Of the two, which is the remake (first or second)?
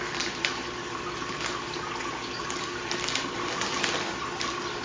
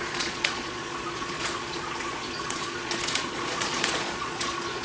second